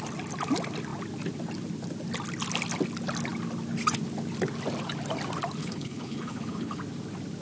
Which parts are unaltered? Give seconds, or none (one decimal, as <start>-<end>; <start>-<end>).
0.0-5.6; 6.8-7.4